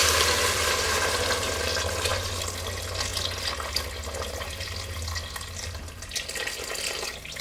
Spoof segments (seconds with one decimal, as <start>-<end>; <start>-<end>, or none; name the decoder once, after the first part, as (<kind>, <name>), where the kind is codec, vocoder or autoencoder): 0.0-0.6 (vocoder, BigVGAN v2)